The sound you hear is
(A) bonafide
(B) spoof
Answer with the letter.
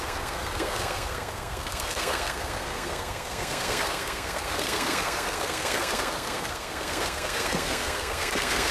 B